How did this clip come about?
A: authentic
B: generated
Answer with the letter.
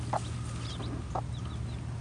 A